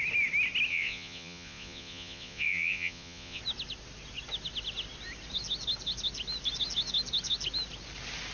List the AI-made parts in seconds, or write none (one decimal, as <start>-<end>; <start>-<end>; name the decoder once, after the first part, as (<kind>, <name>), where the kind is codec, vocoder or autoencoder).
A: 0.7-3.4 (vocoder, Vocos)